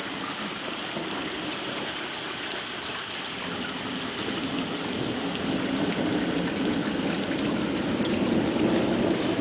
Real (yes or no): yes